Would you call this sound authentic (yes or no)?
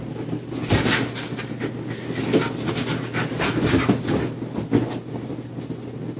yes